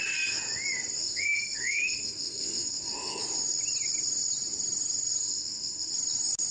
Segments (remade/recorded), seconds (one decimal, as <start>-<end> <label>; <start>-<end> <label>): 0.0-1.0 recorded; 1.0-3.2 remade; 3.2-5.2 recorded; 5.2-5.9 remade; 5.9-6.5 recorded